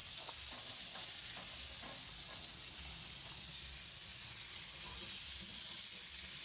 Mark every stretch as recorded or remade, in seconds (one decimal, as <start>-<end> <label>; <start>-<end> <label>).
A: 0.0-4.1 recorded; 4.1-4.9 remade; 4.9-5.5 recorded; 5.5-6.4 remade

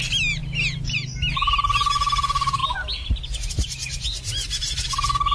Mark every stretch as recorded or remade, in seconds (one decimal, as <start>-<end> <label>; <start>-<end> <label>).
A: 0.0-5.3 recorded

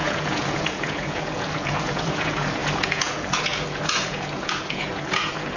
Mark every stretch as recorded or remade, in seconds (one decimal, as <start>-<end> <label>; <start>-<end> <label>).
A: 0.0-5.6 remade

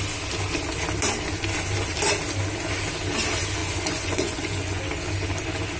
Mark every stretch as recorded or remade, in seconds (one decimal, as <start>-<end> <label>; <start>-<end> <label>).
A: 0.0-3.6 recorded; 3.6-4.8 remade; 4.8-5.8 recorded

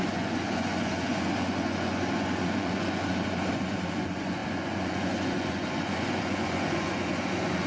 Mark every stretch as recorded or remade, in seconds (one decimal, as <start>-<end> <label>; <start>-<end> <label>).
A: 0.0-7.7 remade

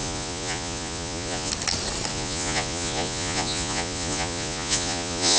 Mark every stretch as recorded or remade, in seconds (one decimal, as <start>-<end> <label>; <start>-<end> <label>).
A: 0.0-1.5 remade; 1.5-2.1 recorded; 2.1-5.4 remade

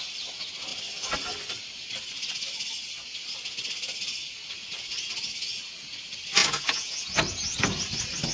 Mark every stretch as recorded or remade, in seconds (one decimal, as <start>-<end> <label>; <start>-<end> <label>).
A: 0.0-6.4 recorded; 6.4-7.2 remade; 7.2-8.3 recorded